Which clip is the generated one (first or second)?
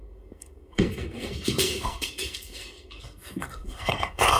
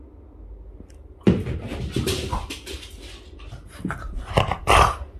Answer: first